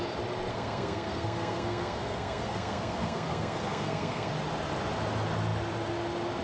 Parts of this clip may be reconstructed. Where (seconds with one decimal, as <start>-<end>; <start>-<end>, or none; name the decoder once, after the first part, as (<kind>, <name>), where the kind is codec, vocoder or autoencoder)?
0.5-4.3 (codec, SNAC)